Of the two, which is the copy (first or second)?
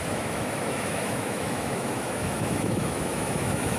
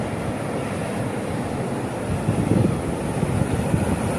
first